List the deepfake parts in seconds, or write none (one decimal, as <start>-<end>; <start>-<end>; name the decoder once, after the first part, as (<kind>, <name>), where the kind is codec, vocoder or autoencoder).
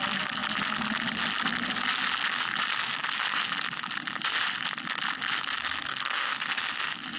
5.9-6.6 (codec, SNAC)